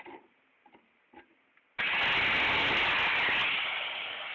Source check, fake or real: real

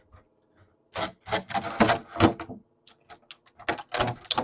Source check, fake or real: real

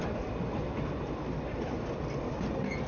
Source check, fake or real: real